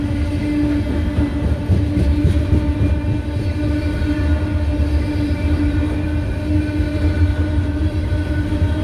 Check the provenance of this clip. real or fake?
real